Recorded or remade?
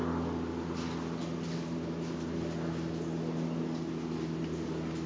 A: recorded